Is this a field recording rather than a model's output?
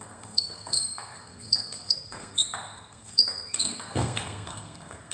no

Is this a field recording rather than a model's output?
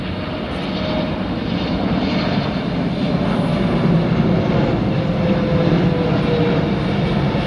yes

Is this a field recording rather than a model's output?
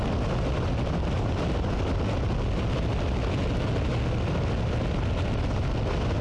yes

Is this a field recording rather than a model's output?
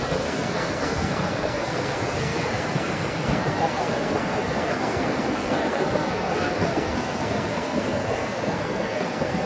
no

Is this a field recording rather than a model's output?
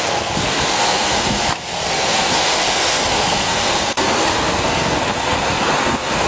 no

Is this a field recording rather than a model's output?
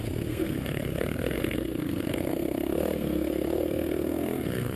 no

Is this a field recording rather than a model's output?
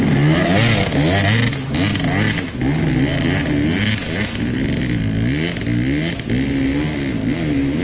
yes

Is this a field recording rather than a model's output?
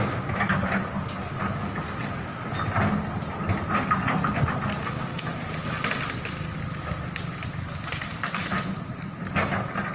yes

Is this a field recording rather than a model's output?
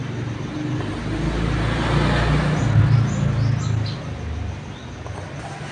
yes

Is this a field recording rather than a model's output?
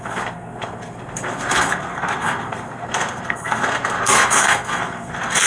no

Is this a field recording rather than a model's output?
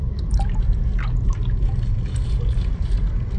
yes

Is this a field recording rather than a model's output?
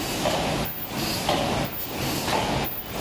yes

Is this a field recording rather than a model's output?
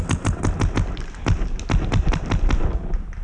yes